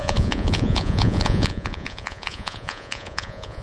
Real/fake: fake